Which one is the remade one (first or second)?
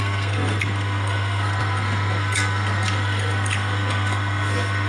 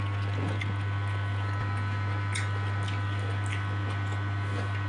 first